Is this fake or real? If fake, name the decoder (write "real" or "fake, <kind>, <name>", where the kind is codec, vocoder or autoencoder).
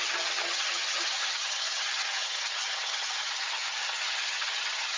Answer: fake, vocoder, HiFi-GAN